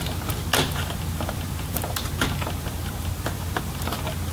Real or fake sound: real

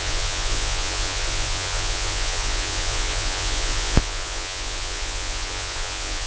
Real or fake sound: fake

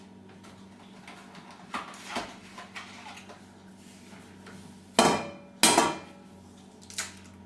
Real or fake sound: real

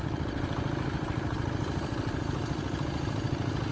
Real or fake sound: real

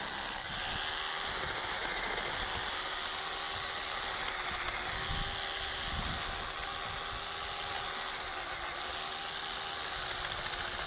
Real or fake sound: real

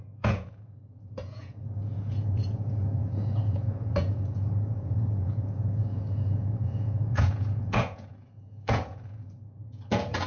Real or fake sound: fake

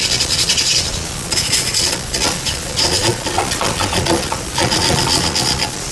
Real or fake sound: fake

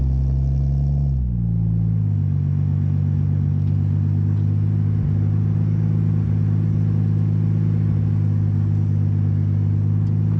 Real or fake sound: real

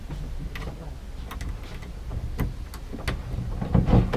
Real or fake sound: real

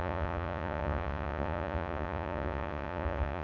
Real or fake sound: fake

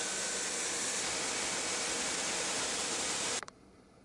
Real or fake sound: real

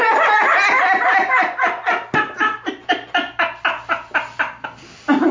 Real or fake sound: real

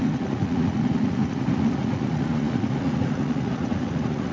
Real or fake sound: fake